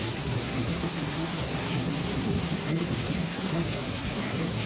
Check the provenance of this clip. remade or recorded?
remade